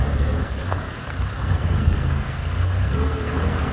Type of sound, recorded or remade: remade